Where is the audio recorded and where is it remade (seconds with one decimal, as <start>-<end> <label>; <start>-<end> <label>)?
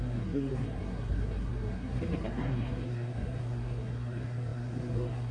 0.0-5.3 remade